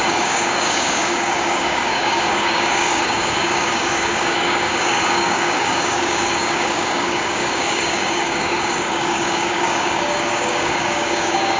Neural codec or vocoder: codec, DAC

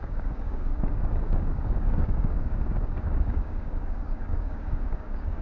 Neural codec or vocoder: codec, DAC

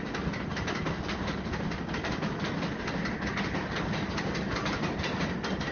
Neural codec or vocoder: none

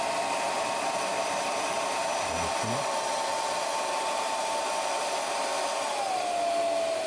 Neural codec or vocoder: none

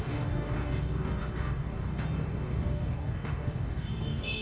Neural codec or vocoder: codec, DAC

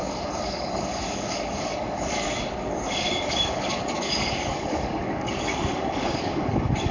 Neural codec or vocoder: codec, DAC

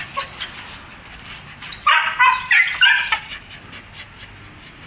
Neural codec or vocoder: none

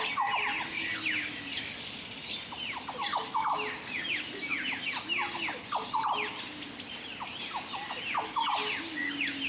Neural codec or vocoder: none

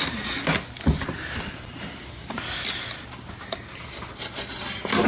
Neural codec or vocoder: none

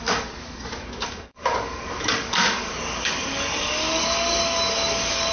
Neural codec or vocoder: codec, DAC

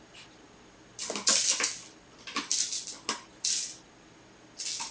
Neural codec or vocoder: none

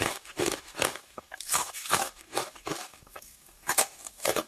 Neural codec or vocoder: codec, DAC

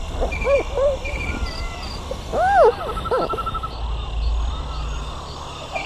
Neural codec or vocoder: none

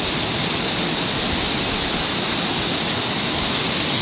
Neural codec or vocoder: none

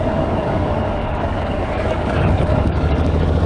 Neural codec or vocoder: codec, DAC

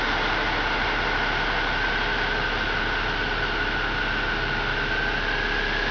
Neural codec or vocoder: none